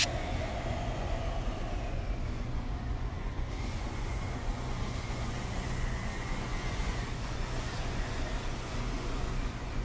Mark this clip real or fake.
fake